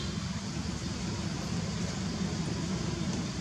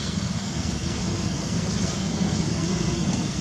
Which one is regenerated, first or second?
second